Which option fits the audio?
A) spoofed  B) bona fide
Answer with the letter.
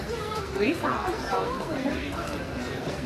A